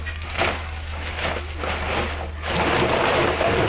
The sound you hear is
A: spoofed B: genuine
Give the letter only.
B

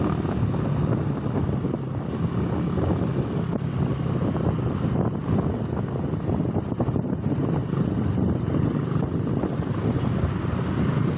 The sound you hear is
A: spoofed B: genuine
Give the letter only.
B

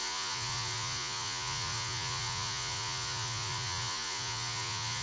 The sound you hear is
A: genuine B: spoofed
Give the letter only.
B